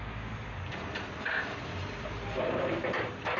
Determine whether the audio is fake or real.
real